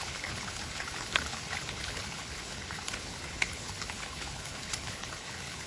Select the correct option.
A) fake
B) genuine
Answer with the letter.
A